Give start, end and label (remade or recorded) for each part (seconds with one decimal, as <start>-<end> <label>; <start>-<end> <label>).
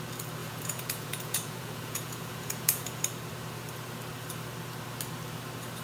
0.0-0.4 recorded; 0.4-3.0 remade; 3.0-5.8 recorded